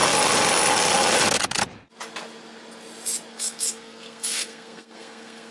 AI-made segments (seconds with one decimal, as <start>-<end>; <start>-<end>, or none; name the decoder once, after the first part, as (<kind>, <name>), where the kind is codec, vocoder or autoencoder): 3.3-5.5 (codec, SNAC)